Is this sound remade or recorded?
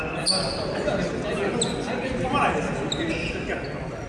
recorded